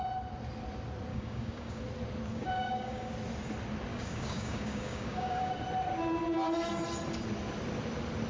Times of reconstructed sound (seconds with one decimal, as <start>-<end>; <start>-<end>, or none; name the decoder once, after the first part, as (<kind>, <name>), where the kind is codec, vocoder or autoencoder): 1.1-1.8 (codec, DAC); 2.3-3.1; 3.9-5.5